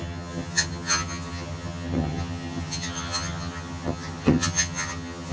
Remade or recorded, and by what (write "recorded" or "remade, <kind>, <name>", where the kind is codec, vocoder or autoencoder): remade, vocoder, HiFi-GAN